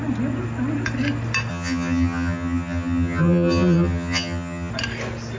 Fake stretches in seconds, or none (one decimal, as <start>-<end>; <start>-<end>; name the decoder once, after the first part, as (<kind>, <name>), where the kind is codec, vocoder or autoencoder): 1.5-4.7 (vocoder, HiFi-GAN)